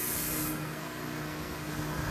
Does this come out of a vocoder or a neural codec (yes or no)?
yes